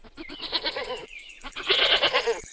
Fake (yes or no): yes